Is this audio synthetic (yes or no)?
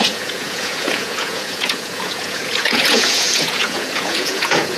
yes